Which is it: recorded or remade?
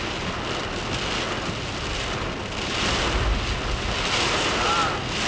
recorded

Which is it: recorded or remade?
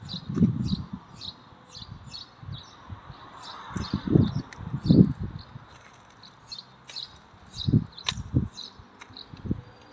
recorded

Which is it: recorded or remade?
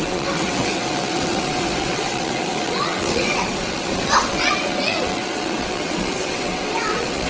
remade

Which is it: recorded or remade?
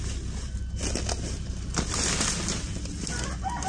recorded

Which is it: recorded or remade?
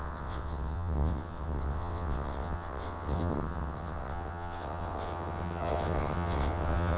remade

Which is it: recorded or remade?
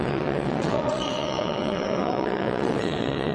remade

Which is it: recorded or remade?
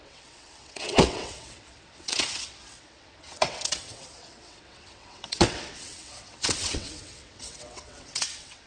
remade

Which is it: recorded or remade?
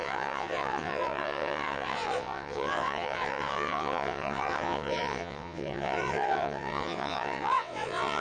remade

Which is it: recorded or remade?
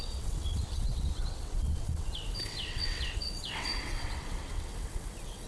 remade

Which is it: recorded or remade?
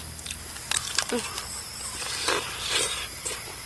recorded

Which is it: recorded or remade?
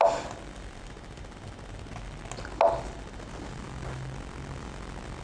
recorded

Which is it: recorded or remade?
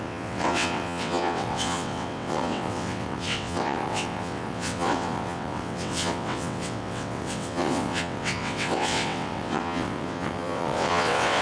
remade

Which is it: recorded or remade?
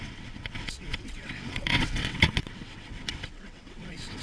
remade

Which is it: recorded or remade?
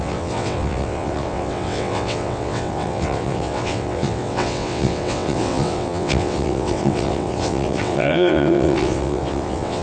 remade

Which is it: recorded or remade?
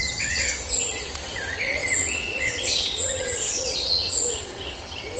remade